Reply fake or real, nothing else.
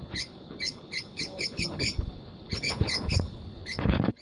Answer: fake